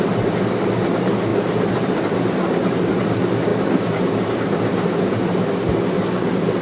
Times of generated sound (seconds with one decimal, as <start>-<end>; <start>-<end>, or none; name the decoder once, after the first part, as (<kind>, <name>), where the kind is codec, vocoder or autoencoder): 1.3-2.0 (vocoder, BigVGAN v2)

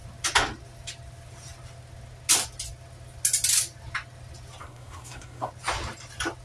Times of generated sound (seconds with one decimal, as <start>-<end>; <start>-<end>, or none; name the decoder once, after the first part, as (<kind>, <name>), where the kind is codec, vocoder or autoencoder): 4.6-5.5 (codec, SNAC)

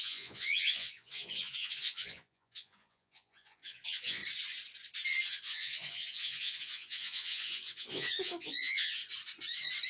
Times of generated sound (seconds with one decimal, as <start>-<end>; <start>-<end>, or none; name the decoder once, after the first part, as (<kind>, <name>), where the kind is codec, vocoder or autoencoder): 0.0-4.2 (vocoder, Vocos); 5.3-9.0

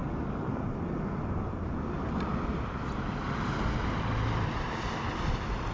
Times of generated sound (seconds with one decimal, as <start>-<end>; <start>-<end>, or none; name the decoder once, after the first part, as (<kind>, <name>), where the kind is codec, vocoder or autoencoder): none